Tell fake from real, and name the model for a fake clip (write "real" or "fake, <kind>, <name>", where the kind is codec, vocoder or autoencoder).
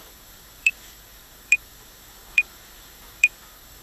fake, codec, DAC